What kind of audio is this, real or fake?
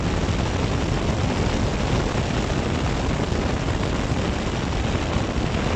real